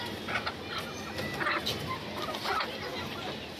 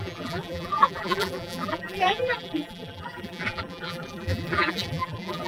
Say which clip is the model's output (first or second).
second